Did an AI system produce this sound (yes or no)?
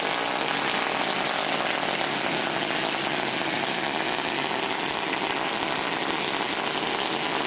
no